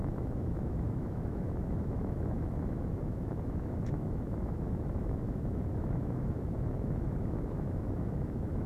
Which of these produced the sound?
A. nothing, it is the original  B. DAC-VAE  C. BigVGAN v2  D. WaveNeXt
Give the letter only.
B